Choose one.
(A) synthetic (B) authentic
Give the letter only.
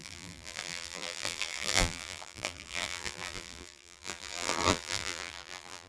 A